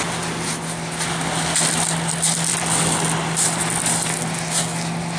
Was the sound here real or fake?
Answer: real